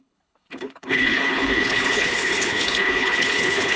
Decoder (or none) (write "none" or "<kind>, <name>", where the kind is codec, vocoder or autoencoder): codec, HILCodec